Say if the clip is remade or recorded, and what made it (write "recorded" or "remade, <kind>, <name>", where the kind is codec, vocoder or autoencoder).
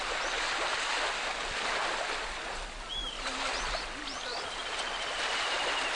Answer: recorded